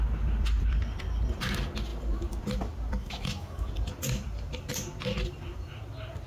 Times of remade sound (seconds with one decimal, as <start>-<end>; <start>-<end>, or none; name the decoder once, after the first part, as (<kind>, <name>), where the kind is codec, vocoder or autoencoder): 3.0-3.7 (autoencoder, DAC-VAE)